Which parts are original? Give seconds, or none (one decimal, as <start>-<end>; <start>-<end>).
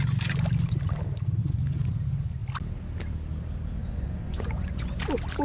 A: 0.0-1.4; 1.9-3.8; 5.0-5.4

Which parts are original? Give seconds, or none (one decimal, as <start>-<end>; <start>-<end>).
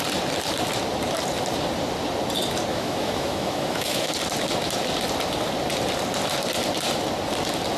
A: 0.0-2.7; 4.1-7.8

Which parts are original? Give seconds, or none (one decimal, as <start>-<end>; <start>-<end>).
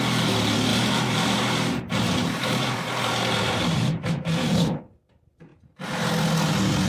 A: 0.0-0.7; 4.8-5.5; 6.1-6.9